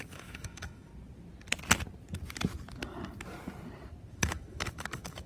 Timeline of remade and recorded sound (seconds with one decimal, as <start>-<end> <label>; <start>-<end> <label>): 0.0-0.9 remade; 0.9-4.1 recorded; 4.1-5.3 remade